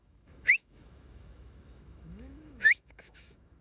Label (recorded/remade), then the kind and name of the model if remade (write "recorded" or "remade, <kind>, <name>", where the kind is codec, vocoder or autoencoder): remade, autoencoder, DAC-VAE